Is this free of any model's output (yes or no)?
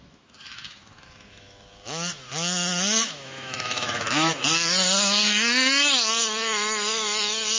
no